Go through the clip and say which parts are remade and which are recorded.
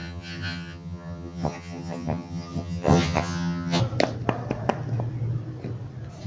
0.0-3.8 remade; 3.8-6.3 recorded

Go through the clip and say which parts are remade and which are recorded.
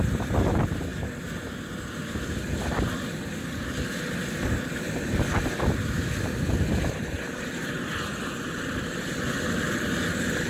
0.0-10.5 recorded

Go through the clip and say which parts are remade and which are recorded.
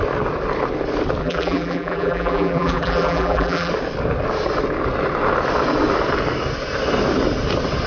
0.0-1.2 recorded; 1.2-3.7 remade; 3.7-7.9 recorded